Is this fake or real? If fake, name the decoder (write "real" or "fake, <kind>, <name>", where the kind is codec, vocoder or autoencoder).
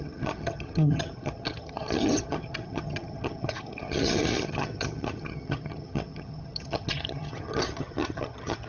fake, vocoder, HiFi-GAN